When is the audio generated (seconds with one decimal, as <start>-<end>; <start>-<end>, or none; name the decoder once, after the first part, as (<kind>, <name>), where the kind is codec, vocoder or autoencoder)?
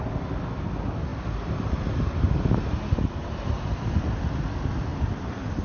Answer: none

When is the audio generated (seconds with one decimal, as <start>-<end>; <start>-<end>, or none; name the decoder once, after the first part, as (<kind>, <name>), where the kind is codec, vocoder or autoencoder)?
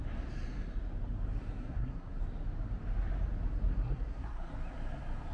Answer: 1.6-2.2 (codec, SNAC); 3.7-4.5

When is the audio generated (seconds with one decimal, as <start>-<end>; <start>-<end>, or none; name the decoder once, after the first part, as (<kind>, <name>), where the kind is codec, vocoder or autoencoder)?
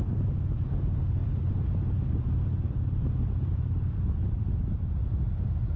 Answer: none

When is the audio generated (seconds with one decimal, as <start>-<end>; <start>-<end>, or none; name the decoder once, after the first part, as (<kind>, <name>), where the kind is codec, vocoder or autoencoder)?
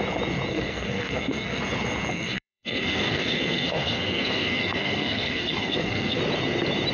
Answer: 0.5-1.6 (codec, SNAC); 2.1-6.2